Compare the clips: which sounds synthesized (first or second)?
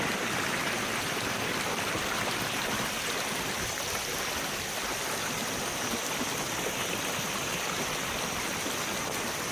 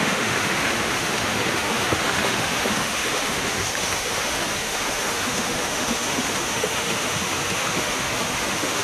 second